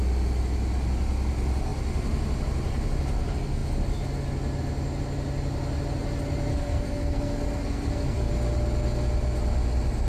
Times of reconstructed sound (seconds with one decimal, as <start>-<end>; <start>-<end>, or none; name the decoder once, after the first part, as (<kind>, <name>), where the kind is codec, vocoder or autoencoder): 6.5-8.3 (codec, SNAC)